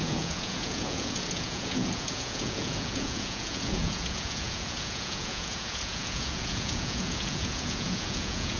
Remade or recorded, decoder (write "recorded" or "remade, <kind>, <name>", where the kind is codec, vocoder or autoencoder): remade, vocoder, Vocos